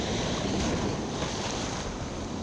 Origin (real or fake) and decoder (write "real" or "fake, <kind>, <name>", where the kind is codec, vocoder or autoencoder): real